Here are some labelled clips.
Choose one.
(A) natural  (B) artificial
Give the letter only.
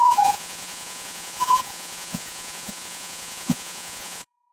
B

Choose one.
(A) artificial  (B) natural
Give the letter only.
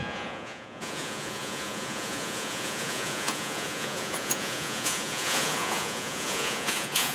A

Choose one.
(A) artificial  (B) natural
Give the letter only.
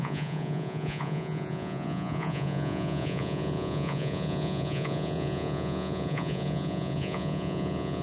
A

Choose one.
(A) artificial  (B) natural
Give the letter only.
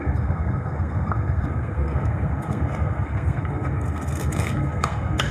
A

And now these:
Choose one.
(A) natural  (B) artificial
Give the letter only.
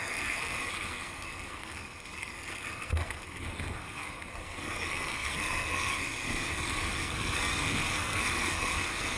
B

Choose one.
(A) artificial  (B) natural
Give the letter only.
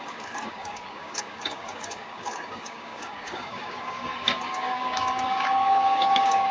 A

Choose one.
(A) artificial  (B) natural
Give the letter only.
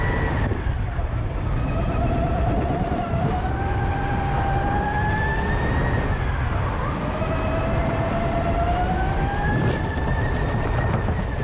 B